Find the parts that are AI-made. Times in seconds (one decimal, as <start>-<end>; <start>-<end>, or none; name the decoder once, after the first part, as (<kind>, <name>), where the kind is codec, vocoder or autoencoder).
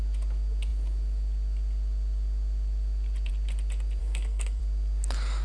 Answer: 4.0-4.6 (codec, SNAC)